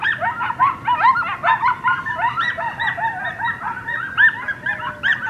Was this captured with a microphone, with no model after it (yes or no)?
yes